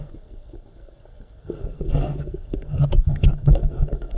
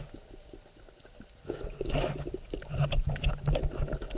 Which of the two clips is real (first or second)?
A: second